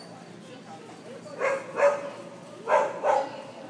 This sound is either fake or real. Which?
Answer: real